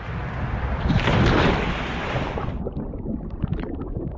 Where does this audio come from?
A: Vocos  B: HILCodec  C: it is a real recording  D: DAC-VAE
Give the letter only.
C